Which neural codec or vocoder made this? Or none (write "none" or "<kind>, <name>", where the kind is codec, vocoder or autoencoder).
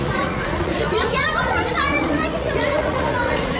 vocoder, Vocos